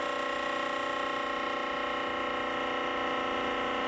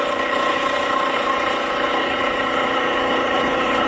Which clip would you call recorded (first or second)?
first